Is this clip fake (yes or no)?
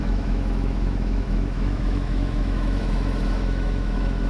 yes